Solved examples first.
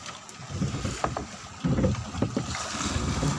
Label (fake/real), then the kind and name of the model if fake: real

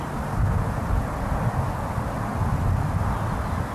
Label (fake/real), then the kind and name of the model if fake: real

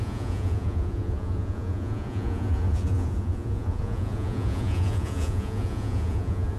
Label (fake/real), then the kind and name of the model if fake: fake, vocoder, Vocos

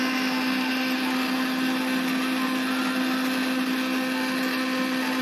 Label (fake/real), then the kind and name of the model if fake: real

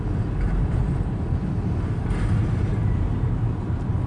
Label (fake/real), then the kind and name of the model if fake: real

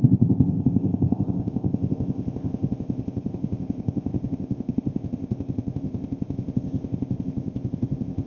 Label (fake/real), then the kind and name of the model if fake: fake, codec, ZipCodec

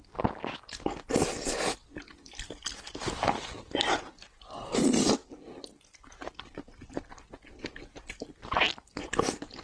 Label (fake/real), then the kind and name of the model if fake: real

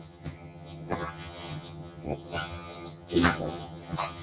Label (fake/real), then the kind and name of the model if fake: fake, vocoder, HiFi-GAN